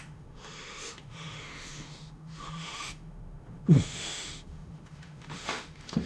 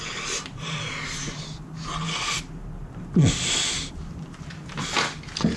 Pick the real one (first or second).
second